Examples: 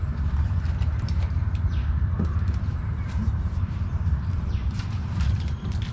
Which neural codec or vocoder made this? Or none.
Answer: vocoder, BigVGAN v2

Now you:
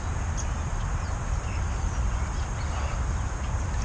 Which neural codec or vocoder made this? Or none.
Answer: none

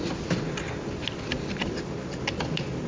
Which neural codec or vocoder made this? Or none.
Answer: none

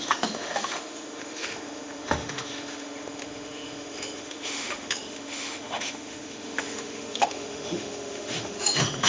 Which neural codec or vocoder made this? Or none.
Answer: autoencoder, DAC-VAE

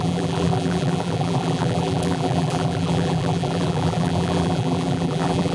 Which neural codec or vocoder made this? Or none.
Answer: vocoder, BigVGAN v2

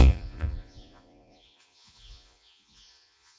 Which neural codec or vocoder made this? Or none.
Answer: vocoder, Vocos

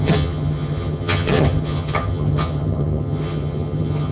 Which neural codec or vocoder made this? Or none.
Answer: vocoder, HiFi-GAN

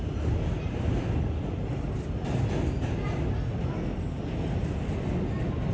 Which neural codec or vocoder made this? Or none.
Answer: none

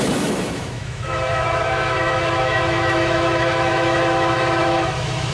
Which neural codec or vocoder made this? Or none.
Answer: autoencoder, DAC-VAE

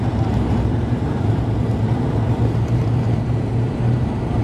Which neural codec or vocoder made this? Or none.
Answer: vocoder, BigVGAN v2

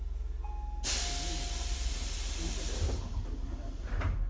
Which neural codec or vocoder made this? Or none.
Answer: none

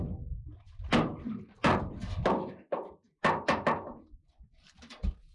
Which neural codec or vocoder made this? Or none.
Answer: none